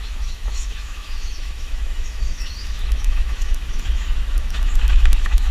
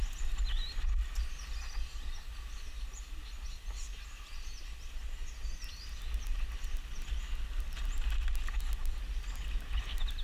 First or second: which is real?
second